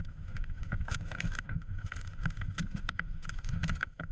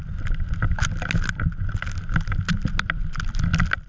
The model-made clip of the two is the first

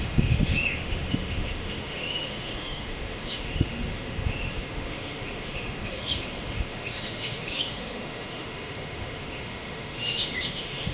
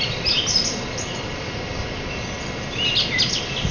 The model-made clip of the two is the first